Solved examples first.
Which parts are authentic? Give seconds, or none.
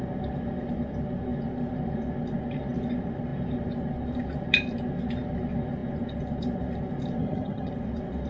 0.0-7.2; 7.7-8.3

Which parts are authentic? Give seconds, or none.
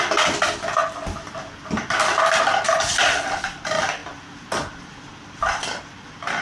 0.8-2.4